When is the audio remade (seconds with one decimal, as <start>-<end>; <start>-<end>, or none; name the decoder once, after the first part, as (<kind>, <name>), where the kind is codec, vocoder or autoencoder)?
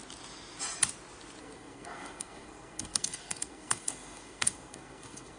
1.4-5.4 (codec, SNAC)